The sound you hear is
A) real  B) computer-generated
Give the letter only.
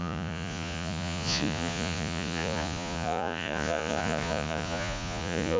B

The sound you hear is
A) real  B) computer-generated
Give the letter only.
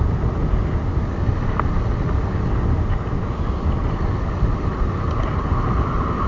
A